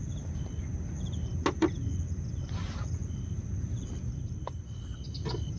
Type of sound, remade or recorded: recorded